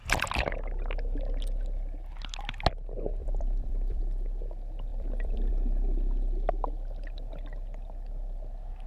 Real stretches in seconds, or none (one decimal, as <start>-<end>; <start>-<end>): 0.0-3.2; 4.0-4.9; 5.5-8.9